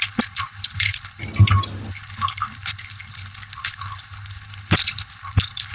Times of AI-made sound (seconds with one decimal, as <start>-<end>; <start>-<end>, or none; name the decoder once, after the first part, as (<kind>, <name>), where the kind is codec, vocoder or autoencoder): 0.0-1.2 (codec, HILCodec); 1.9-5.7